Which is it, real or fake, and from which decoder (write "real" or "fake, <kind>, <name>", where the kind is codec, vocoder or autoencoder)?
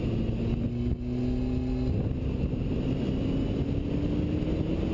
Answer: real